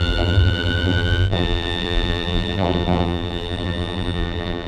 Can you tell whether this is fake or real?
fake